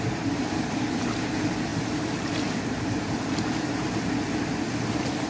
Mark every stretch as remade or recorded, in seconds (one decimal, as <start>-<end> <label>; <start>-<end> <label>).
0.0-5.3 recorded